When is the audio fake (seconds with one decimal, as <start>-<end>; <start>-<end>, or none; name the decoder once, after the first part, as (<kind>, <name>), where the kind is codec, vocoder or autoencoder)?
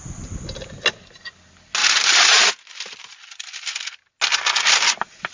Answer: none